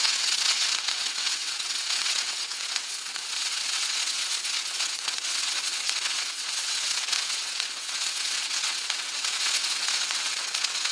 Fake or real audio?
fake